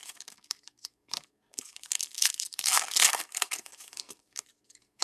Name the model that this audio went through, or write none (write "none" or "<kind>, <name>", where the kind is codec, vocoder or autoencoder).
codec, SNAC